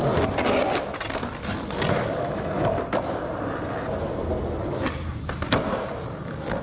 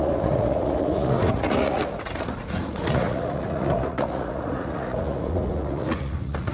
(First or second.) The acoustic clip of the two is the first